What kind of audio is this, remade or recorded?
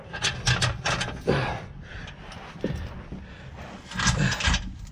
recorded